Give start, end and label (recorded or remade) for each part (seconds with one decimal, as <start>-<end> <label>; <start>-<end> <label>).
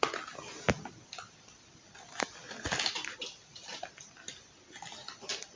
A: 0.0-5.6 recorded